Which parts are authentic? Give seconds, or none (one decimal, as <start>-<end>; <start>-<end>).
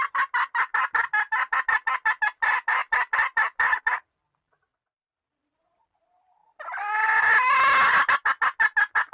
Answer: 0.0-2.8; 3.8-9.1